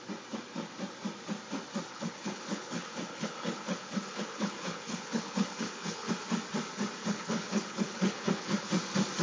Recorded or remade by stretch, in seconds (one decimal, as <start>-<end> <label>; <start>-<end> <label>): 0.0-1.9 recorded; 1.9-6.1 remade; 6.1-7.0 recorded; 7.0-8.7 remade; 8.7-9.2 recorded